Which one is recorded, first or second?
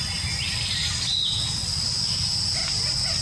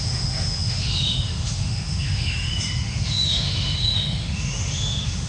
first